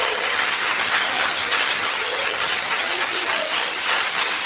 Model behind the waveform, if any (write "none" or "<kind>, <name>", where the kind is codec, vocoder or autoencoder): vocoder, HiFi-GAN